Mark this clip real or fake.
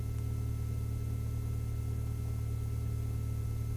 real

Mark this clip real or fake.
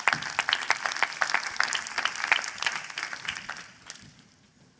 real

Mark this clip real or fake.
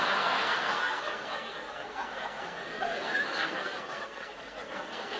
fake